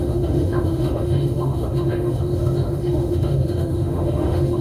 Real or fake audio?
fake